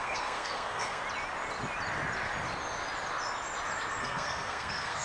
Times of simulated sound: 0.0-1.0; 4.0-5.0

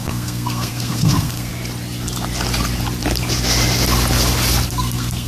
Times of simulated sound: 0.0-1.5; 4.7-5.3